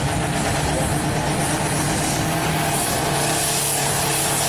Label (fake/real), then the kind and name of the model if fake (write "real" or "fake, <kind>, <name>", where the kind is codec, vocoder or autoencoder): real